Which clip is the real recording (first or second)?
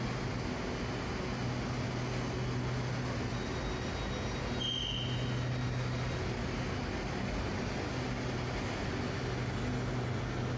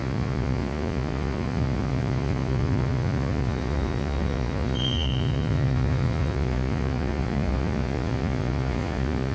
first